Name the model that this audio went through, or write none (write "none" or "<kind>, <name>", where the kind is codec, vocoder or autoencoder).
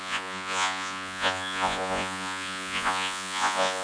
vocoder, Vocos